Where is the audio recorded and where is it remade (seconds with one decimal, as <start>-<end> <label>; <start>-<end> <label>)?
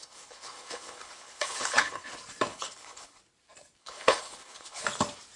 0.0-2.1 remade; 2.1-2.5 recorded; 2.5-3.2 remade; 3.2-3.8 recorded; 3.8-4.8 remade; 4.8-5.4 recorded